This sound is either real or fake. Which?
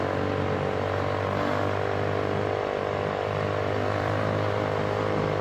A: fake